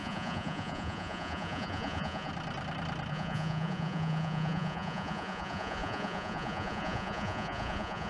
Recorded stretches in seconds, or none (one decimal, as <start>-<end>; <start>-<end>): 2.3-3.1